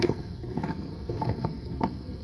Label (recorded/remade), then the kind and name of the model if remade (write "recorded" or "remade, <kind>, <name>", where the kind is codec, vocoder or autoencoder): remade, codec, SNAC